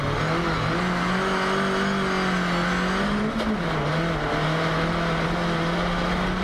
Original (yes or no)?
yes